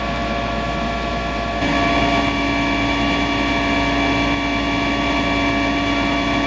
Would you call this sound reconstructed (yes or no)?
no